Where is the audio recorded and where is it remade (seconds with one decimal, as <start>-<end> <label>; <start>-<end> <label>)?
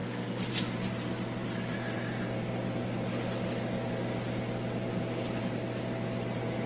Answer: 0.0-6.7 recorded